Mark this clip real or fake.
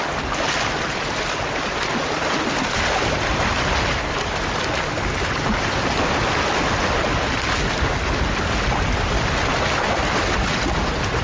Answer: real